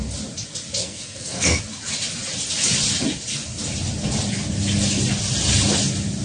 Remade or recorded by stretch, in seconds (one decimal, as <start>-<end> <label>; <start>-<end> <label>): 0.0-0.8 recorded; 0.8-1.6 remade; 1.6-6.2 recorded